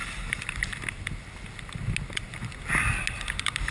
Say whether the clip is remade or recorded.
recorded